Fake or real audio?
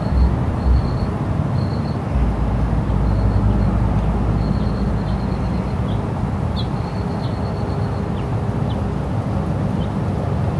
real